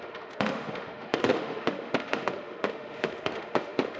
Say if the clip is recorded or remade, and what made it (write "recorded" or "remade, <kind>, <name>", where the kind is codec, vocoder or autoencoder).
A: remade, autoencoder, DAC-VAE